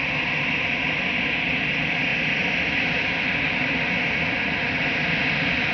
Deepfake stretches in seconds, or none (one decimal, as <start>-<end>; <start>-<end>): none